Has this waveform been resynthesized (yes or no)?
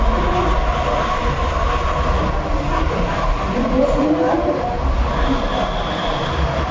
no